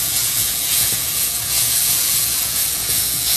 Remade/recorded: remade